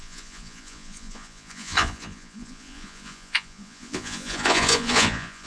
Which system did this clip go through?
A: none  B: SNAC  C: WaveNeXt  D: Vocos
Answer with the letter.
D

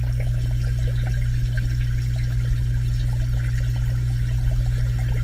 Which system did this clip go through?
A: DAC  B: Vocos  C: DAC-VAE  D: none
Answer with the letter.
D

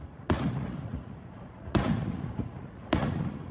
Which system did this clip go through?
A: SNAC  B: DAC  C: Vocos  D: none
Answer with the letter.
C